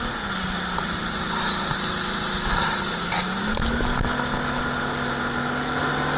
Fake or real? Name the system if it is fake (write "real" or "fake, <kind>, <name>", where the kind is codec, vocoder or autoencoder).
real